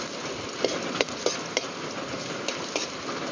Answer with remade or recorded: recorded